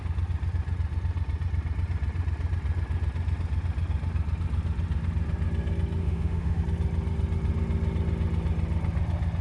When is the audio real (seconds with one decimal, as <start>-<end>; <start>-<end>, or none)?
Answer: 0.0-6.0; 6.6-9.4